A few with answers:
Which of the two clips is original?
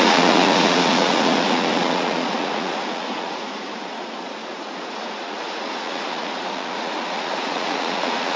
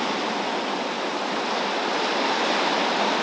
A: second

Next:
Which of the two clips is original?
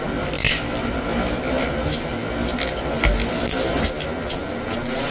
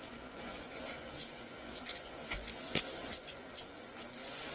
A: first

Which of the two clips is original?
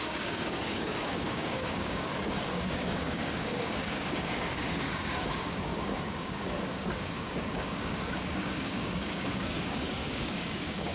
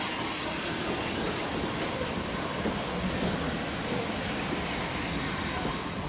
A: second